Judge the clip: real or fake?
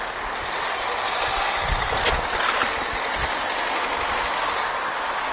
real